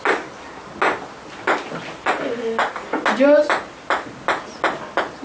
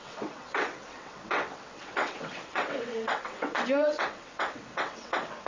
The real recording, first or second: first